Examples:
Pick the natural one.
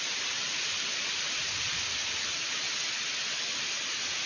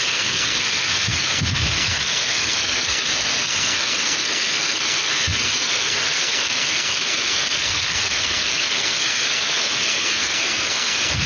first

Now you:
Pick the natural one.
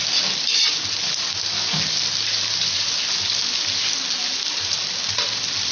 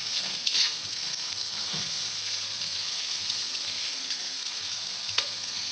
first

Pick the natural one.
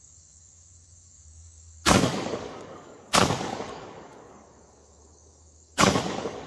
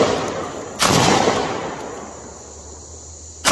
second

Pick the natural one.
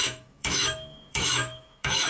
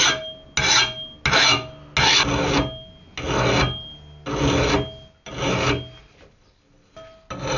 second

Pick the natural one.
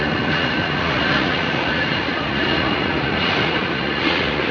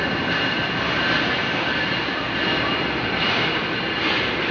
second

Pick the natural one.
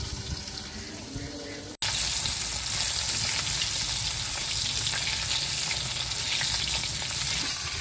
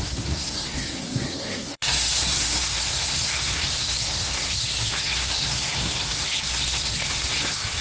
first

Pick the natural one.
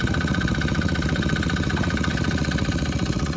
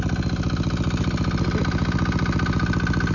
second